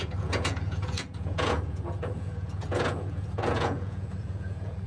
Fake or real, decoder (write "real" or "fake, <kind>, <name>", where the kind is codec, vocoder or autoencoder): fake, vocoder, Vocos